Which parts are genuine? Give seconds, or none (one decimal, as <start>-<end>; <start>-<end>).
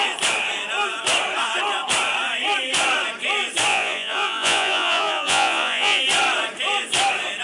0.0-3.7; 6.0-7.4